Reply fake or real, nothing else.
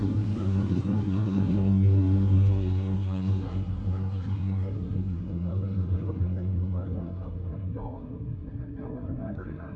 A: fake